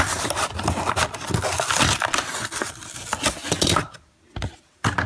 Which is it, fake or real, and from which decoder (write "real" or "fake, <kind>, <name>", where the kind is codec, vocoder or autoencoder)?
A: real